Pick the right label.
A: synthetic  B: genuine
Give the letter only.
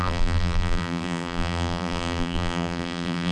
A